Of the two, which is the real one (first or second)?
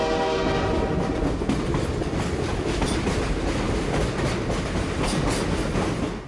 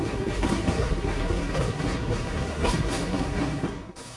first